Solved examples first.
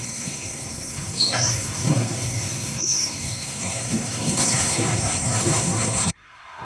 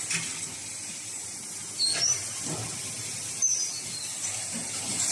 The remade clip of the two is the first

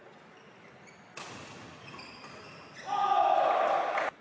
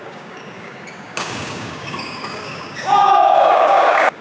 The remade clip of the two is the second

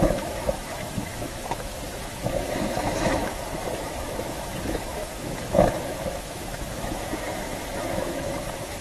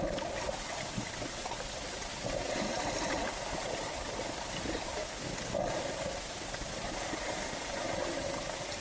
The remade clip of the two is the first